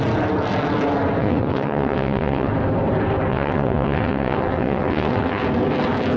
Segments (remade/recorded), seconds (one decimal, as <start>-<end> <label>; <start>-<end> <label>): 0.0-1.2 recorded; 1.2-2.5 remade; 2.5-3.3 recorded; 3.3-5.4 remade; 5.4-6.2 recorded